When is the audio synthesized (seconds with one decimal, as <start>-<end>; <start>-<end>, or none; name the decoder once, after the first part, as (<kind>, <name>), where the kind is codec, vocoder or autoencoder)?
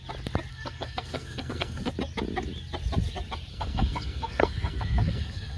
0.5-1.9 (codec, SNAC); 3.5-5.6